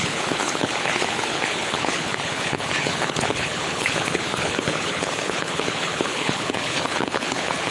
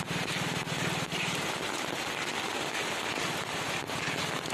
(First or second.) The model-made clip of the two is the first